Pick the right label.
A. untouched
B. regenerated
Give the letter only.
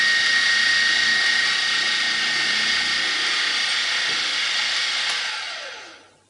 A